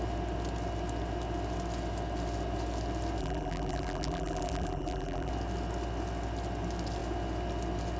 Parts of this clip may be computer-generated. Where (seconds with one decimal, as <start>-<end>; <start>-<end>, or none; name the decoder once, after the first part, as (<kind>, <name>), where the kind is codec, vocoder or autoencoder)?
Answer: 3.2-5.3 (vocoder, BigVGAN v2)